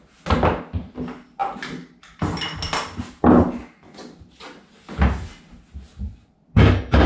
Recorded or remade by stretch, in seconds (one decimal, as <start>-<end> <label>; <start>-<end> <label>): 0.0-7.1 recorded